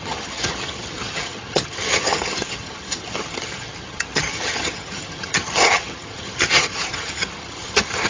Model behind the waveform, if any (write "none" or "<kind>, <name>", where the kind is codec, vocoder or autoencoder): vocoder, HiFi-GAN